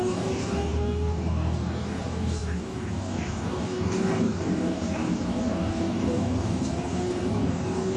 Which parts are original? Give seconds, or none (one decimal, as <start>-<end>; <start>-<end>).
none